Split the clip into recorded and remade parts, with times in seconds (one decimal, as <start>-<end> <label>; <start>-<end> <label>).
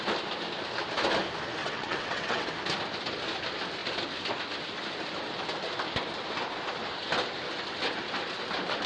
0.0-1.6 recorded; 1.6-2.5 remade; 2.5-8.9 recorded